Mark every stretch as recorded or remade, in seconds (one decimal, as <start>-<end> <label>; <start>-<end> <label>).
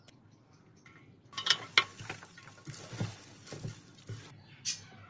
0.0-5.1 recorded